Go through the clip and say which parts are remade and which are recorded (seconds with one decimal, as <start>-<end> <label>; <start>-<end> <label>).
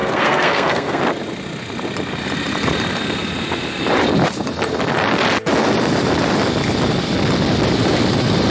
0.0-1.0 remade; 1.0-8.5 recorded